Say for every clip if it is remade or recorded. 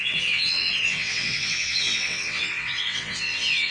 remade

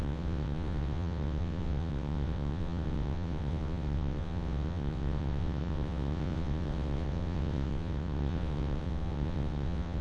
remade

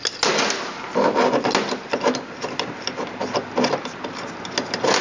recorded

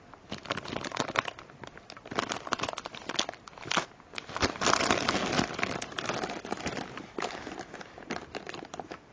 recorded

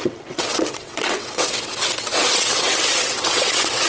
remade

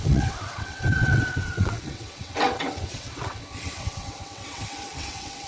remade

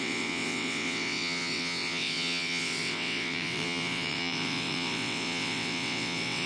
remade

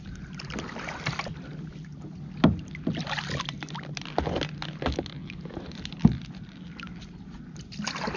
recorded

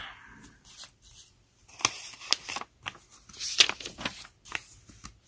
recorded